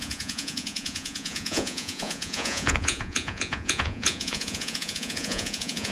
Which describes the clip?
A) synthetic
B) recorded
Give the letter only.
A